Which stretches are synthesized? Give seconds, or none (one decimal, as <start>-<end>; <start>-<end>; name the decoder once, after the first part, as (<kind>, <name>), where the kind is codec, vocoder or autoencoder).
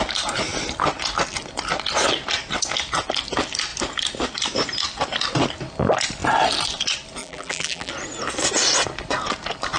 7.2-7.9 (vocoder, BigVGAN v2)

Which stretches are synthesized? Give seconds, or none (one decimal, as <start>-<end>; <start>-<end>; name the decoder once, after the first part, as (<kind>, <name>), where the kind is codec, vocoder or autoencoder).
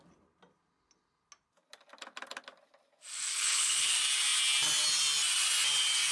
3.3-3.9 (codec, HILCodec)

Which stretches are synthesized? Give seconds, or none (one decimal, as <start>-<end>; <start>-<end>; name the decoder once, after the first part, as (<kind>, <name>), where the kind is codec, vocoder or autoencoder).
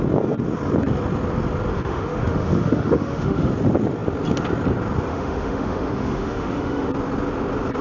1.7-3.5 (autoencoder, DAC-VAE); 5.1-6.9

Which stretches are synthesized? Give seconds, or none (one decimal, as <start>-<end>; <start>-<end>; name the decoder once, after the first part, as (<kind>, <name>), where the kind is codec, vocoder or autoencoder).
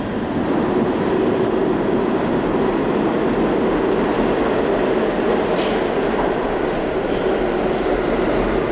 none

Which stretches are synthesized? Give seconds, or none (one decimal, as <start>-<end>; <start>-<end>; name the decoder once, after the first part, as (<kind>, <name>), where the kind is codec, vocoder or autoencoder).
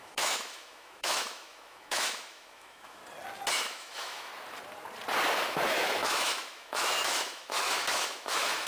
0.0-3.0 (autoencoder, DAC-VAE); 3.5-4.3; 5.5-8.7